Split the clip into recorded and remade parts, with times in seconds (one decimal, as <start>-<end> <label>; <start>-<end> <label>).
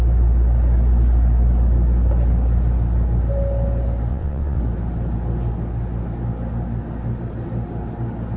0.0-4.1 recorded; 4.1-4.6 remade; 4.6-8.4 recorded